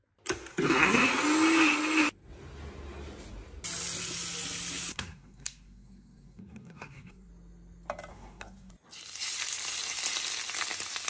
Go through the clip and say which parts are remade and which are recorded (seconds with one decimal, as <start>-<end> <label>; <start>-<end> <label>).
0.0-0.5 recorded; 0.5-1.1 remade; 1.1-4.9 recorded; 4.9-7.3 remade; 7.3-8.1 recorded; 8.1-8.7 remade; 8.7-11.1 recorded

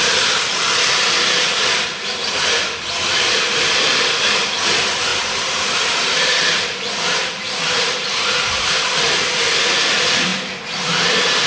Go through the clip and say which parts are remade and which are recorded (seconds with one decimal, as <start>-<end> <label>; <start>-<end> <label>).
0.0-5.1 recorded; 5.1-9.1 remade; 9.1-11.5 recorded